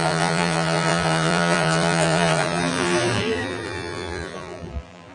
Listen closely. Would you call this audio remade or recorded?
remade